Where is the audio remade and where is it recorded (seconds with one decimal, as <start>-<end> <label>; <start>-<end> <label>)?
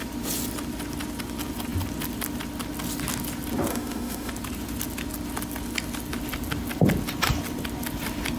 0.0-3.7 recorded; 3.7-4.3 remade; 4.3-8.4 recorded